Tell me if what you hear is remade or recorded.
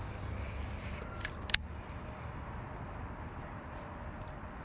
recorded